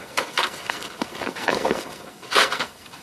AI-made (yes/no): yes